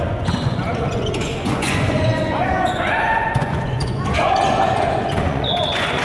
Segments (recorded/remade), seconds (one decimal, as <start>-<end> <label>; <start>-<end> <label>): 0.0-6.0 remade